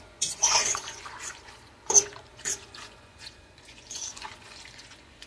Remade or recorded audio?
remade